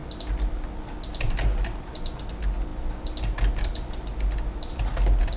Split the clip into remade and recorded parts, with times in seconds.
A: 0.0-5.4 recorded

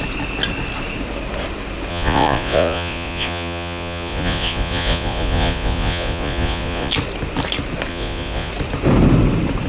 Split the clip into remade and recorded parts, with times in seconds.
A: 0.0-1.9 recorded; 1.9-6.9 remade; 6.9-7.9 recorded; 7.9-8.5 remade; 8.5-9.7 recorded

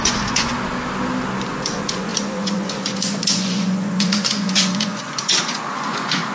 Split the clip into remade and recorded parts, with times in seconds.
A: 0.0-0.5 remade; 0.5-1.5 recorded; 1.5-6.3 remade

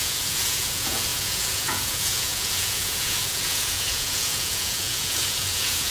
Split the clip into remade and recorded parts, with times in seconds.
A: 0.0-5.9 remade